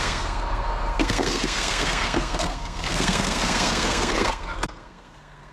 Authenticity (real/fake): fake